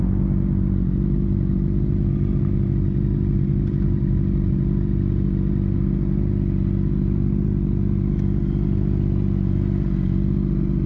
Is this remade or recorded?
recorded